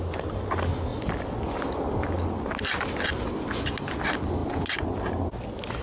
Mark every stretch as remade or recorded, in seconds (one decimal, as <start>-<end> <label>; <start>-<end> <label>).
0.0-5.8 recorded